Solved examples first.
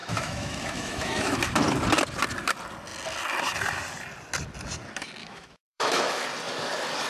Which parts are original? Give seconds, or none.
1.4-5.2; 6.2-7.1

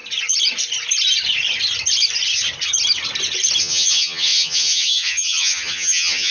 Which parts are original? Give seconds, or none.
0.0-3.6

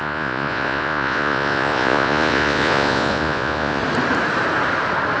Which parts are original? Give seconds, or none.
3.8-5.2

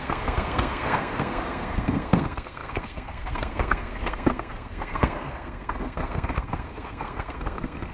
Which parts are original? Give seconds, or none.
none

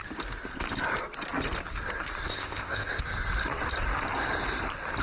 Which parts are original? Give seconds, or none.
0.0-2.3; 3.0-5.0

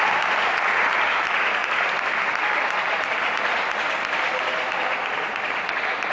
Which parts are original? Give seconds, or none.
0.0-6.1

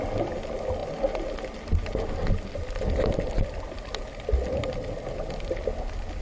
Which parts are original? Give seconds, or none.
0.0-6.2